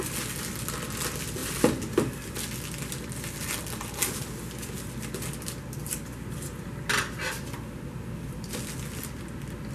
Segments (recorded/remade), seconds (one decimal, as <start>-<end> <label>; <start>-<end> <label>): 0.0-9.7 recorded